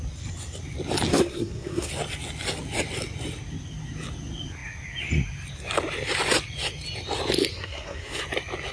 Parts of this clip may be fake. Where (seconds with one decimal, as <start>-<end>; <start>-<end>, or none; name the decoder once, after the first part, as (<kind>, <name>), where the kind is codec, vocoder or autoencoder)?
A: 1.1-1.9 (codec, SNAC); 7.5-8.2